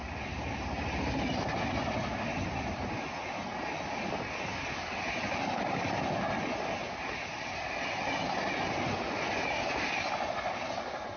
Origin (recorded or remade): recorded